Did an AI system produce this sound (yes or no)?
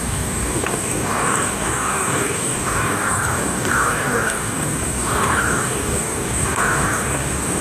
yes